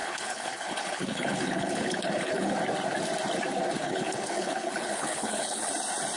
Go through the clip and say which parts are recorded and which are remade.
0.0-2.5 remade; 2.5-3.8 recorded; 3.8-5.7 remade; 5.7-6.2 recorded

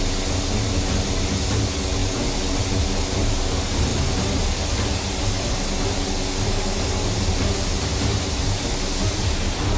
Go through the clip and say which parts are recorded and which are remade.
0.0-9.8 recorded

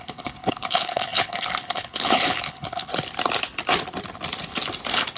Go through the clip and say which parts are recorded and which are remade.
0.0-2.9 remade; 2.9-5.2 recorded

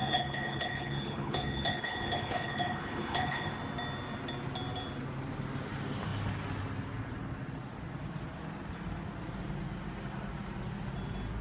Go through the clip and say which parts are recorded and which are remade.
0.0-3.5 remade; 3.5-11.4 recorded

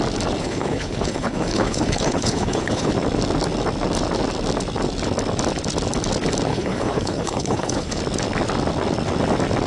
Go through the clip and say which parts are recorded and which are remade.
0.0-0.4 recorded; 0.4-2.9 remade; 2.9-6.5 recorded; 6.5-8.0 remade; 8.0-9.7 recorded

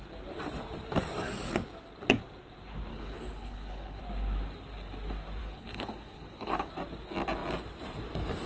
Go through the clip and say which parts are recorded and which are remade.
0.0-2.9 recorded; 2.9-4.0 remade; 4.0-5.4 recorded; 5.4-6.7 remade; 6.7-8.5 recorded

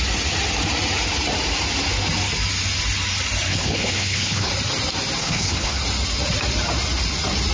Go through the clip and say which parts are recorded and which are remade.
0.0-3.5 recorded; 3.5-4.5 remade; 4.5-5.2 recorded; 5.2-5.8 remade; 5.8-7.5 recorded